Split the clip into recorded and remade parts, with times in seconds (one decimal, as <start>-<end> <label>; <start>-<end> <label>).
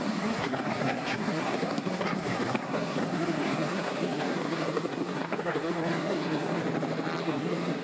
0.0-6.6 remade; 6.6-7.2 recorded; 7.2-7.8 remade